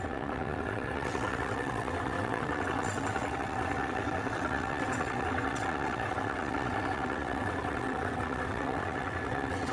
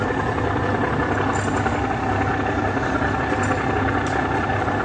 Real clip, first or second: second